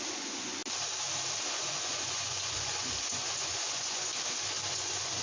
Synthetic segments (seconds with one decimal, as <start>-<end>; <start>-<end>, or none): 0.0-0.6; 1.5-4.1; 4.7-5.2

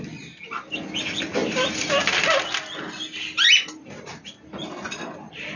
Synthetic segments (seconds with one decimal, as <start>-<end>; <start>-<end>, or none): none

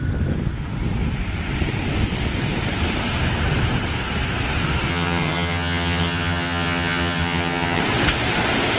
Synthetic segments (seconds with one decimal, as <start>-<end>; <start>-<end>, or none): 4.9-7.8